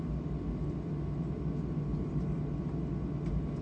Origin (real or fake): real